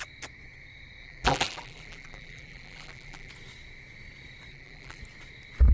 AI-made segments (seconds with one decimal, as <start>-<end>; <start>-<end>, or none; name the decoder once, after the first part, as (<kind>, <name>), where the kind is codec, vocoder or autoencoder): 1.0-3.3 (vocoder, BigVGAN v2); 4.5-5.0